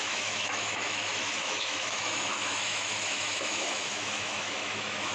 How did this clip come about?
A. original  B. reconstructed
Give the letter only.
B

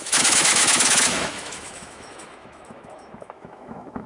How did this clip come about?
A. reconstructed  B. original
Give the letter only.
A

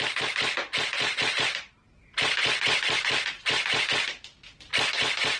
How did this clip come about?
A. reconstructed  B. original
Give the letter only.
B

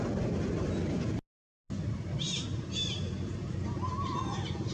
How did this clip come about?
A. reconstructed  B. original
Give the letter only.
B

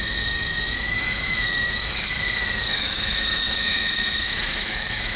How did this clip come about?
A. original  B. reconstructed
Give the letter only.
B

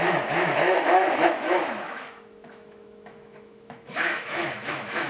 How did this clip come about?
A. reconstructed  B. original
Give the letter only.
A